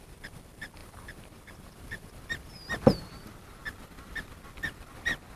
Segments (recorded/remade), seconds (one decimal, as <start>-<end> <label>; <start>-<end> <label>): 0.0-3.6 remade; 3.6-5.4 recorded